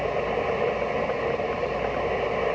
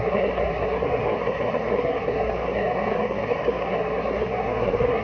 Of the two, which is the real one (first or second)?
first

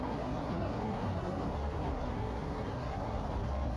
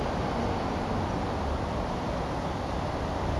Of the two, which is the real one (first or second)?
second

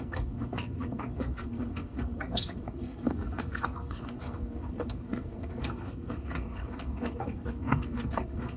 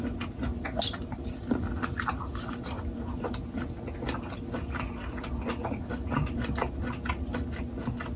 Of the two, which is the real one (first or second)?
second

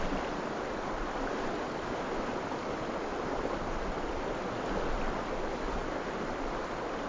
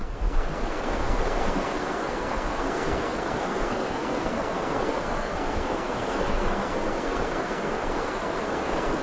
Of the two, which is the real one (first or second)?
first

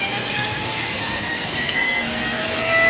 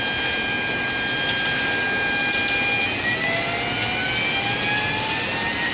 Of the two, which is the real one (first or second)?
second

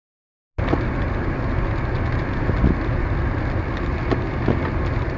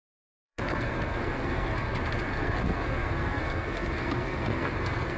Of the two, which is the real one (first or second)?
first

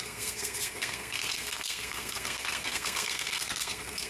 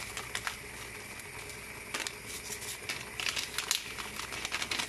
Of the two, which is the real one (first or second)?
second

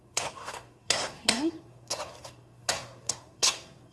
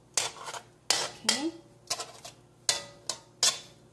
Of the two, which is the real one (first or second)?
second